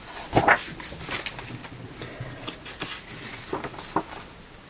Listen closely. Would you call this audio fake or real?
real